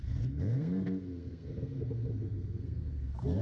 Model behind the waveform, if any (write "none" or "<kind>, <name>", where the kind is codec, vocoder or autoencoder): codec, SNAC